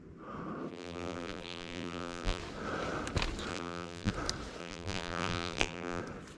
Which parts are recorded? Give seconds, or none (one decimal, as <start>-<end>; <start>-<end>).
0.0-0.7; 2.4-3.5; 4.1-4.6; 6.0-6.4